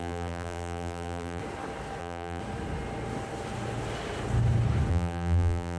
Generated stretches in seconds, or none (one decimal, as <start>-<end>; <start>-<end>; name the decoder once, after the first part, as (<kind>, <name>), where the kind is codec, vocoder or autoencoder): 0.0-1.4 (vocoder, BigVGAN v2); 2.0-2.4; 4.9-5.8